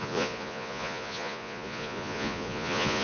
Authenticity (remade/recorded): remade